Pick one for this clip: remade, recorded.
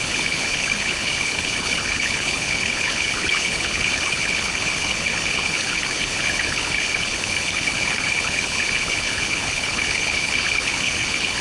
remade